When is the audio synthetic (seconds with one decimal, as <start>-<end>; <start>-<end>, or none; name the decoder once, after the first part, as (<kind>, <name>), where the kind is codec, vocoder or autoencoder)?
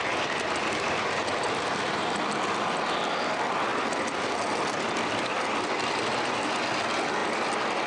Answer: 3.7-5.3 (vocoder, BigVGAN v2)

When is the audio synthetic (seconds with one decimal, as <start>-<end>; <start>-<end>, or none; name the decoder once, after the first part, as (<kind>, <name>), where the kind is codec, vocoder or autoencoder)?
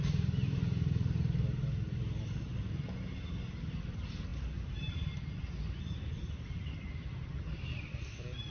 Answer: none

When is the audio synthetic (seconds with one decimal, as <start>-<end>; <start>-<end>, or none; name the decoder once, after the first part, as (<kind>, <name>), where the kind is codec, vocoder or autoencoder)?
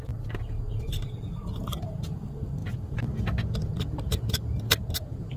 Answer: 0.0-2.6 (vocoder, BigVGAN v2); 3.7-5.4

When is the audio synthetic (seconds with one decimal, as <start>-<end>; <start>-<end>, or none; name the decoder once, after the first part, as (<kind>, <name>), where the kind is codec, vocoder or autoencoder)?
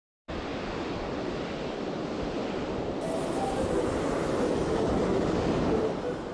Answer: 0.0-0.5 (vocoder, BigVGAN v2); 1.2-2.4